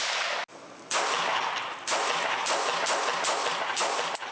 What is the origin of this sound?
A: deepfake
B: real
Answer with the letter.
B